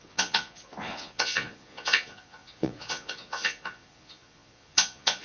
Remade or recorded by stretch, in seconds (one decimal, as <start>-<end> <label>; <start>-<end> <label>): 0.0-5.2 remade